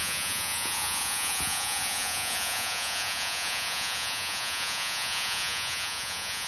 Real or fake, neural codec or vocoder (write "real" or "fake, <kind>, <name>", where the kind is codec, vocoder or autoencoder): fake, vocoder, Vocos